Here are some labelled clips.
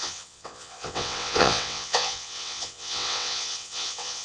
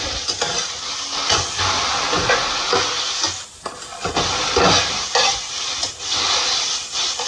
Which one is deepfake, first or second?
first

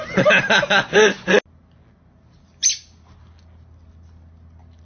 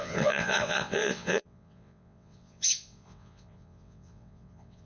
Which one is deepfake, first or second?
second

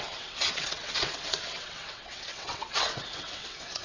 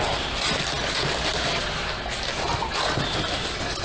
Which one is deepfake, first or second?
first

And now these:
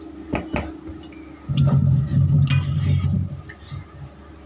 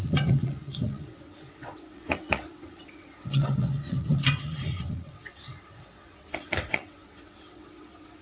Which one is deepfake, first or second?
second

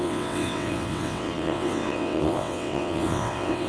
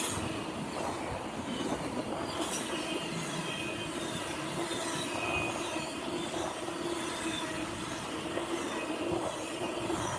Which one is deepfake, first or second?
first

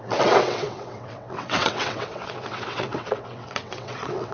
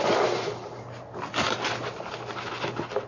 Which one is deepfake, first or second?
first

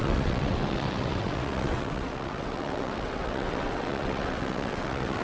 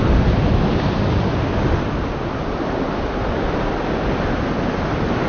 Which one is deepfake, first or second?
first